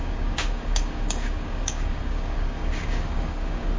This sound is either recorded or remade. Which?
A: remade